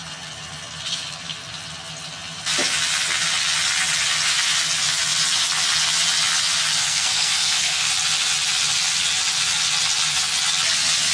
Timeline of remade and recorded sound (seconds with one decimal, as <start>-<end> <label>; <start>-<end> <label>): 0.0-6.7 recorded; 6.7-7.9 remade; 7.9-11.1 recorded